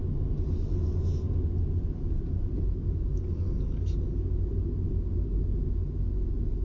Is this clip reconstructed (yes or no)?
no